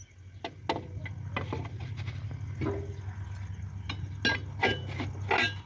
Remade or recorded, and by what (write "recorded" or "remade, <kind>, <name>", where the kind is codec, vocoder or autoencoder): recorded